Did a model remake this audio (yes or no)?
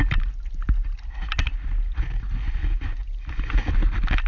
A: no